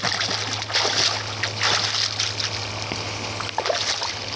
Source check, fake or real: real